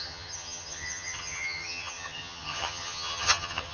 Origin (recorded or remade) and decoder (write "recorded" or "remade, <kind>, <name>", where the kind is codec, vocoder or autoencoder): remade, vocoder, HiFi-GAN